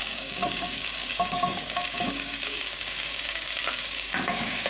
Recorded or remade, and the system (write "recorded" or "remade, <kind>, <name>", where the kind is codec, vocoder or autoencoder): remade, codec, DAC